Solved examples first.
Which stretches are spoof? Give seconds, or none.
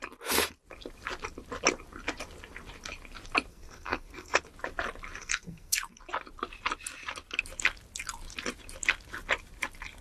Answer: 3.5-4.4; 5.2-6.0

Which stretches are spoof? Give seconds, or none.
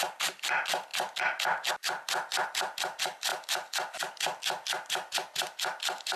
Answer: 0.0-6.2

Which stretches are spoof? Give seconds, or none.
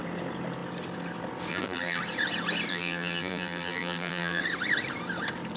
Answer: 1.5-2.0; 2.7-4.4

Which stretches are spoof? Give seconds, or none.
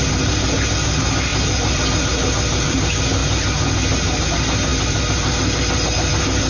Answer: none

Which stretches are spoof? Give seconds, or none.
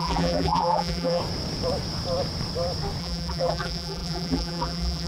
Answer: 0.0-1.2; 3.0-5.1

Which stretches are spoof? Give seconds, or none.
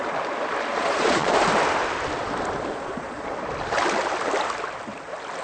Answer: 0.7-1.3; 2.7-3.3